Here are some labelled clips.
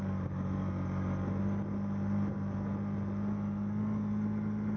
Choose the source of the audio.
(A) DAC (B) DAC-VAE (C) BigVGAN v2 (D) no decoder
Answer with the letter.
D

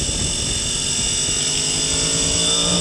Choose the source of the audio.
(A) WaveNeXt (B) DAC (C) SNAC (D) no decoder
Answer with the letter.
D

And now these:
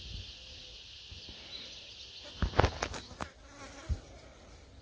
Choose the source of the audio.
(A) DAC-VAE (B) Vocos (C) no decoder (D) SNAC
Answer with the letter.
C